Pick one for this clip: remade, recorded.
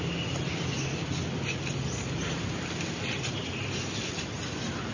recorded